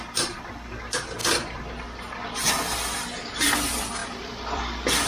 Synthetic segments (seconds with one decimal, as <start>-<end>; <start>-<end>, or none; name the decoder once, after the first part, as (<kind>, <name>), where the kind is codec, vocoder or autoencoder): 1.2-1.7 (vocoder, BigVGAN v2); 4.0-4.6